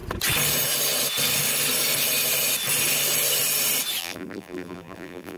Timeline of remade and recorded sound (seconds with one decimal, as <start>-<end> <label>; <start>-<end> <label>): 0.0-4.0 recorded; 4.0-5.4 remade